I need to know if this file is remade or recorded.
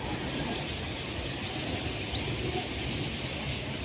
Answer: recorded